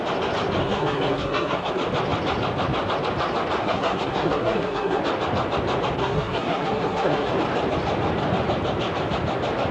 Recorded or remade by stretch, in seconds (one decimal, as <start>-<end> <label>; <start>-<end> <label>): 0.0-0.6 recorded; 0.6-1.7 remade; 1.7-3.6 recorded; 3.6-5.0 remade; 5.0-6.0 recorded; 6.0-7.3 remade; 7.3-9.7 recorded